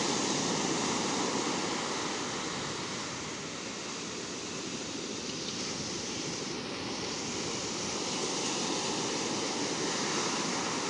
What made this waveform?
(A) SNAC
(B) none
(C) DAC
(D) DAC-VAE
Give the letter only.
B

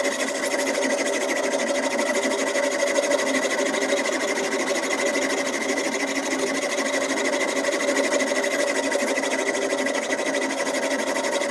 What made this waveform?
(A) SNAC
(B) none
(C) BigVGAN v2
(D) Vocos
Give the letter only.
B